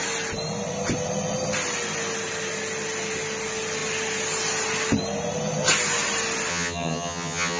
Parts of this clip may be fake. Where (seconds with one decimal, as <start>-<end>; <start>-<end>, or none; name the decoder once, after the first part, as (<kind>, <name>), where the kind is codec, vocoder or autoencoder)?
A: 6.5-7.6 (vocoder, HiFi-GAN)